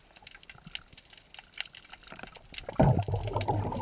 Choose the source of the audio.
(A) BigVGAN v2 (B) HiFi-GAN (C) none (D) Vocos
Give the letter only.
C